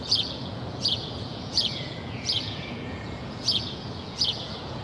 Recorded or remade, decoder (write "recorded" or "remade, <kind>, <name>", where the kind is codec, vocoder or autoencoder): remade, vocoder, Vocos